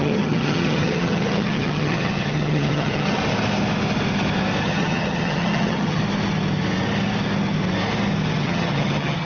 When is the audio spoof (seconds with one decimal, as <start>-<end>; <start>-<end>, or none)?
0.0-3.2; 4.6-6.0; 8.4-9.3